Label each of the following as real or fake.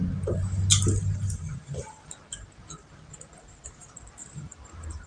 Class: real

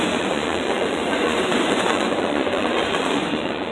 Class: fake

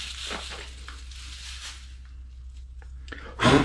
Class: real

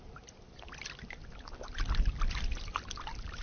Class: real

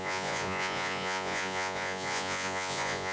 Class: fake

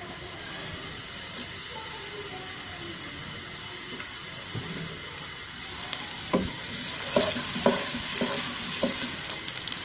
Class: real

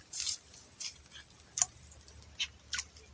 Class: real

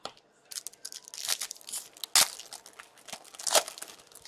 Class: real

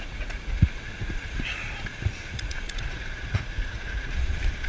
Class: fake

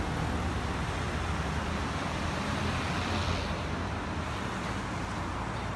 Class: real